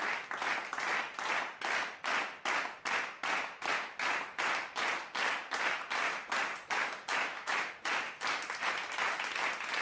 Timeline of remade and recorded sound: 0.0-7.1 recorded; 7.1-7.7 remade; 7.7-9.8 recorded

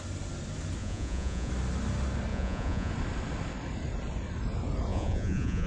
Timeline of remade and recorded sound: 0.0-0.8 recorded; 0.8-1.5 remade; 1.5-2.3 recorded; 2.3-2.9 remade; 2.9-4.9 recorded; 4.9-5.7 remade

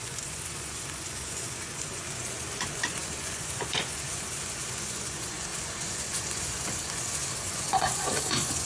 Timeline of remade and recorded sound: 0.0-8.7 remade

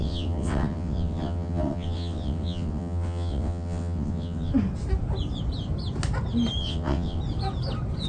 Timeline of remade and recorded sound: 0.0-4.5 remade; 4.5-6.6 recorded; 6.6-7.2 remade; 7.2-8.1 recorded